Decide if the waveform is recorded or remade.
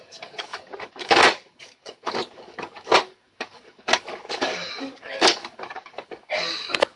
remade